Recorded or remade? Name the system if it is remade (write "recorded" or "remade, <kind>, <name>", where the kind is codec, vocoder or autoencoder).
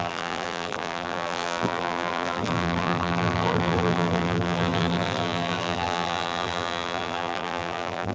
remade, vocoder, BigVGAN v2